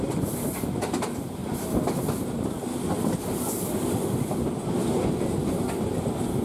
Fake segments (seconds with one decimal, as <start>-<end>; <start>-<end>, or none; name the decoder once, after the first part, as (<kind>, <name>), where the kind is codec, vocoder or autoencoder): none